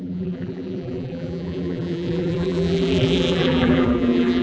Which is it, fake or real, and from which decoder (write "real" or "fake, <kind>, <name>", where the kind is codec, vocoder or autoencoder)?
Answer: fake, vocoder, BigVGAN v2